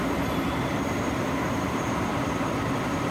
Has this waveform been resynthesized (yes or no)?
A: yes